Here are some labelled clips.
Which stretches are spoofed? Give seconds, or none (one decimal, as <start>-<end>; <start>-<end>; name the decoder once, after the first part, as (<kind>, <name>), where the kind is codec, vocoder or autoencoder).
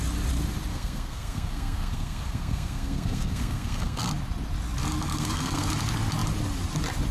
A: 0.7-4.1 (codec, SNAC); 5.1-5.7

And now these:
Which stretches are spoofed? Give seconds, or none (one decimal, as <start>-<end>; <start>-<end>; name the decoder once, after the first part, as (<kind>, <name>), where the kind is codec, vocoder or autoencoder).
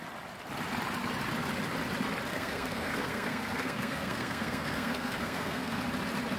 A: 2.3-5.8 (codec, SNAC)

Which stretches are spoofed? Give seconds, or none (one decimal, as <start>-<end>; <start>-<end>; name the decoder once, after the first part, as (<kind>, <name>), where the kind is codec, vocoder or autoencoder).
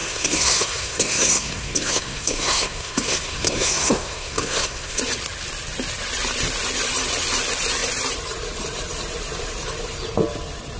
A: 0.0-5.0 (codec, SNAC)